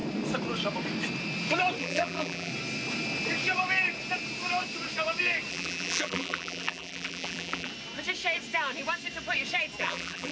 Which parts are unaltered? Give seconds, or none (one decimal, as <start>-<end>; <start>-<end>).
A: 0.0-1.8; 2.5-5.5; 7.7-9.8